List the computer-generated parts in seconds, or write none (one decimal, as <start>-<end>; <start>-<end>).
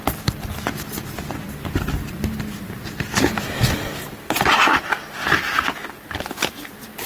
none